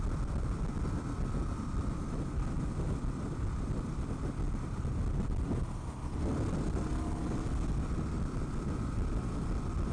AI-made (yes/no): no